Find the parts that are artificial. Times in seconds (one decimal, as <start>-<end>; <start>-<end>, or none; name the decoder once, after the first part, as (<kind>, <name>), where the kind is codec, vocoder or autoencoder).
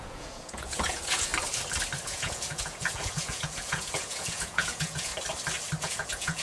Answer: 0.0-1.3 (vocoder, Vocos); 2.0-5.1; 5.8-6.4